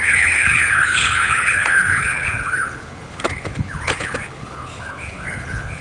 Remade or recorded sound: remade